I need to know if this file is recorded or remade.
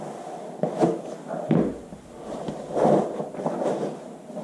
recorded